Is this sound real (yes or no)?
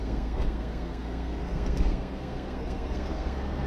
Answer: no